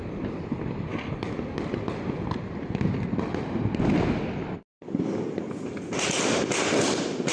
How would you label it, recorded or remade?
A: recorded